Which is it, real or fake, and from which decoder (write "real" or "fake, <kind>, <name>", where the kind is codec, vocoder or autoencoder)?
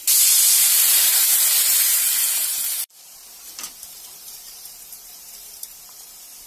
fake, vocoder, BigVGAN v2